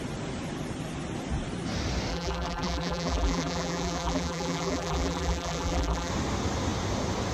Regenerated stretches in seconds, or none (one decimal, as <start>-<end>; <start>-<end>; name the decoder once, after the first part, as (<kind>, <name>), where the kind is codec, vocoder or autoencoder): 2.1-6.1 (vocoder, BigVGAN v2)